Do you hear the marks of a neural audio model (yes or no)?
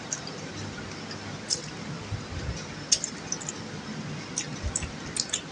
no